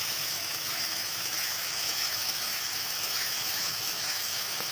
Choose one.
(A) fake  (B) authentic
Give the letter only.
A